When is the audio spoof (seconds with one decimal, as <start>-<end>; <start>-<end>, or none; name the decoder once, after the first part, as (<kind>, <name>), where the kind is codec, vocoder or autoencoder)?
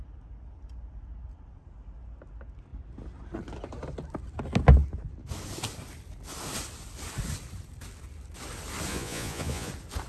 8.9-9.7 (vocoder, Vocos)